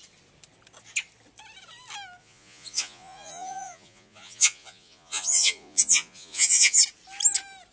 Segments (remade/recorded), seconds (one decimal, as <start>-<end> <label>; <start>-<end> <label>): 0.0-2.2 recorded; 2.2-6.8 remade; 6.8-7.7 recorded